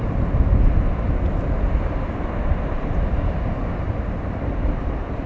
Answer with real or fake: real